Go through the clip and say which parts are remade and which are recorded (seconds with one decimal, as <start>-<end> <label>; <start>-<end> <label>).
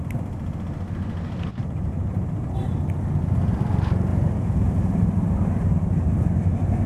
0.0-1.5 recorded; 1.5-2.9 remade; 2.9-4.1 recorded; 4.1-6.1 remade; 6.1-6.9 recorded